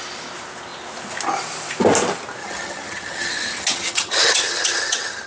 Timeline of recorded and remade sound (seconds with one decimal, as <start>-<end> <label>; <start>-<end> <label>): 0.0-2.4 recorded; 2.4-5.3 remade